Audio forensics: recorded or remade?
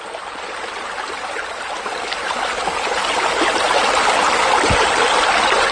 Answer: recorded